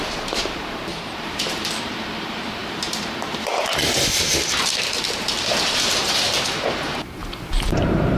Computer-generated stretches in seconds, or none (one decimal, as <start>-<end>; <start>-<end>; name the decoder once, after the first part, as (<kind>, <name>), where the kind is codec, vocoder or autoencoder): 0.0-7.2 (vocoder, BigVGAN v2); 7.7-8.2